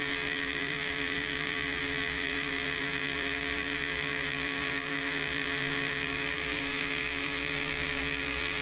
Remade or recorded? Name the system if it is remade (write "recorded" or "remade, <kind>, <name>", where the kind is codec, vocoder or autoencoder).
remade, vocoder, BigVGAN v2